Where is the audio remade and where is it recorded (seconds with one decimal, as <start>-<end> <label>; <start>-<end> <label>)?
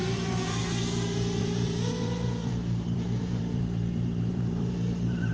0.0-0.6 remade; 0.6-1.4 recorded; 1.4-5.3 remade